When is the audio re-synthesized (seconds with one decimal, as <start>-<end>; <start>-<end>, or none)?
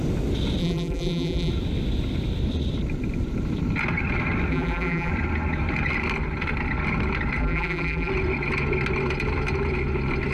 0.6-1.5; 4.5-5.1; 7.4-8.1